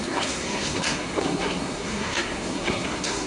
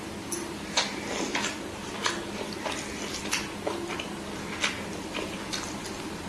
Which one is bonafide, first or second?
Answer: second